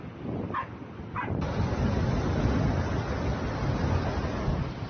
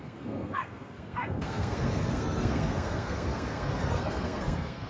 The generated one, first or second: second